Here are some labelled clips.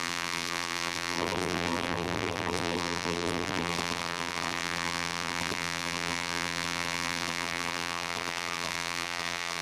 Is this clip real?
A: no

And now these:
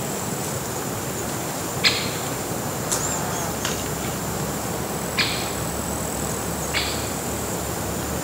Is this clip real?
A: no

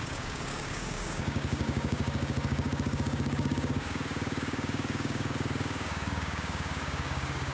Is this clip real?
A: no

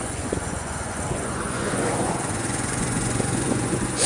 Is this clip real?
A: no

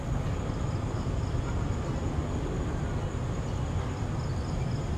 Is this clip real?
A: yes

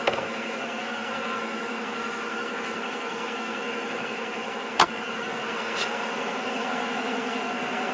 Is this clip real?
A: no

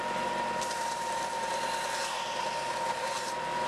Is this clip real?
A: no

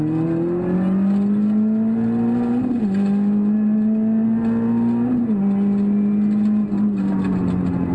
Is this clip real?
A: yes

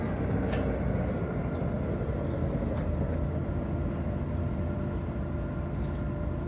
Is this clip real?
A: yes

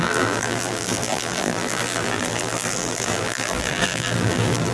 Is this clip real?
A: no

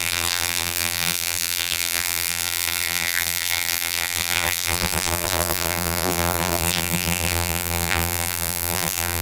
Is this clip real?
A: no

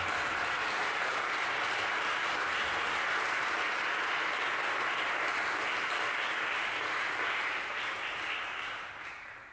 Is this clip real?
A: yes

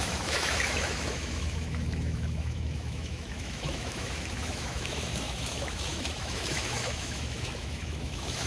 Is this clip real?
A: no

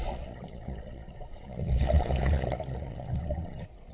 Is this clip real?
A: no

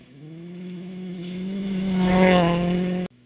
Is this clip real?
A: no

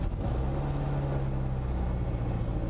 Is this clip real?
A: yes